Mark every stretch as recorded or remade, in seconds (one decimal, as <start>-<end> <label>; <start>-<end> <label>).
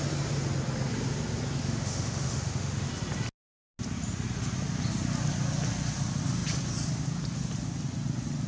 0.0-1.6 recorded; 1.6-2.9 remade; 2.9-8.5 recorded